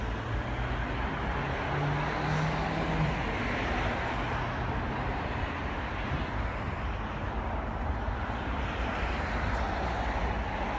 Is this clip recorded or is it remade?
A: recorded